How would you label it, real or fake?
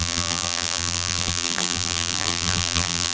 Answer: fake